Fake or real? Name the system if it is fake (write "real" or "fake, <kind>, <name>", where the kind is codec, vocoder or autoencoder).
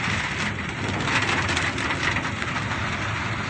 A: real